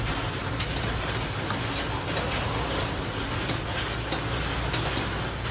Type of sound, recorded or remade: recorded